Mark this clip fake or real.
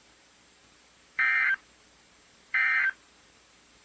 fake